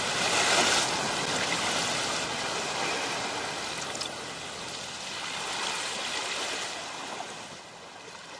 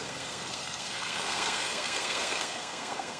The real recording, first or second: first